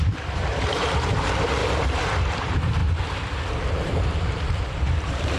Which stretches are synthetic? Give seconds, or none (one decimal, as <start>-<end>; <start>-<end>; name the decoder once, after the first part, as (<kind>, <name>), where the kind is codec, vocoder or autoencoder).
0.0-1.6 (vocoder, BigVGAN v2); 2.4-2.8; 3.5-5.4